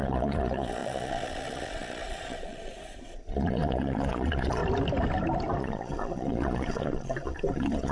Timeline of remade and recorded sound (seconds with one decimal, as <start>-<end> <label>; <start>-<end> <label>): 0.0-4.6 remade; 4.6-5.6 recorded; 5.6-7.9 remade